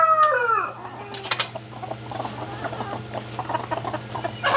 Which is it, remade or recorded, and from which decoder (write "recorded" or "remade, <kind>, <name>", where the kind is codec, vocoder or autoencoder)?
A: recorded